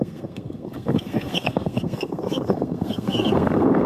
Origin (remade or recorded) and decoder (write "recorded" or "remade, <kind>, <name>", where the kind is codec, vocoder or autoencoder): remade, codec, SNAC